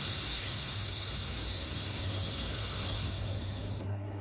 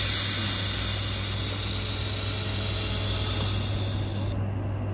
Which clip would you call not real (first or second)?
first